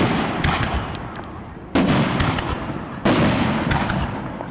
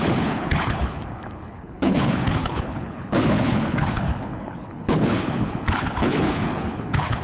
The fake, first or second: second